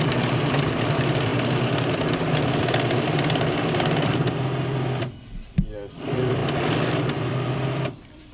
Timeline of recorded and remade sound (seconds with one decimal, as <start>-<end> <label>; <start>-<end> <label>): 0.0-6.4 remade; 6.4-7.0 recorded; 7.0-8.3 remade